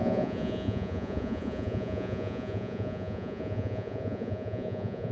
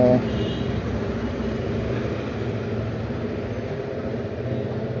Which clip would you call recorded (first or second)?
second